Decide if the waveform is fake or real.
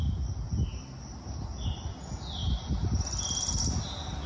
real